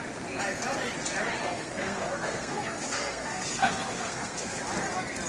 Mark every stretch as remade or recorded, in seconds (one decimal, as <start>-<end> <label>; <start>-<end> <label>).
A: 0.0-1.4 recorded; 1.4-4.6 remade; 4.6-5.3 recorded